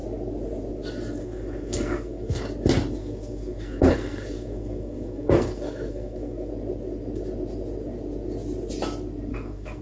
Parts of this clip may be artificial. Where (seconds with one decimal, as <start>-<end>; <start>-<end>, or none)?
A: 1.2-2.4; 3.0-6.5; 9.3-9.8